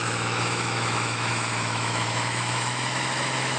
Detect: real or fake fake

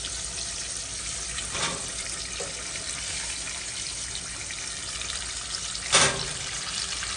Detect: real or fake fake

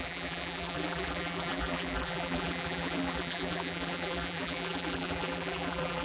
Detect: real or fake fake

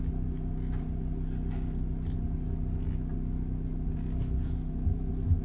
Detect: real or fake real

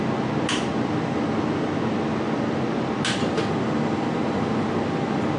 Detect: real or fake real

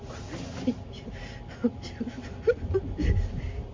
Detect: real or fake real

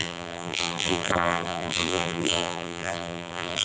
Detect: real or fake fake